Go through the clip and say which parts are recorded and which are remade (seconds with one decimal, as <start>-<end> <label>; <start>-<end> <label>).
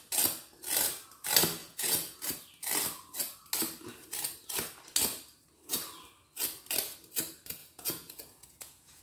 0.0-1.6 recorded; 1.6-2.2 remade; 2.2-7.6 recorded; 7.6-9.0 remade